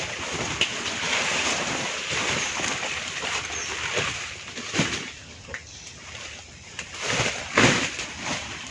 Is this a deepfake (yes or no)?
yes